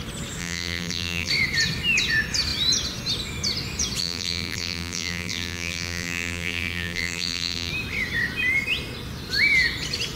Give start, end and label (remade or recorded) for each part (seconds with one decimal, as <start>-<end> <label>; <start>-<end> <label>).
0.0-0.4 recorded; 0.4-1.3 remade; 1.3-4.0 recorded; 4.0-7.7 remade; 7.7-10.2 recorded